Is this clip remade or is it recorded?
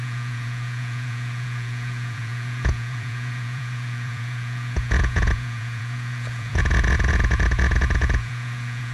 remade